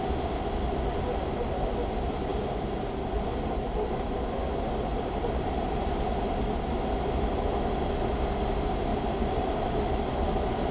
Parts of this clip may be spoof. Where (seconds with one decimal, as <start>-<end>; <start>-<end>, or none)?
2.3-4.2; 4.9-6.3; 8.9-9.8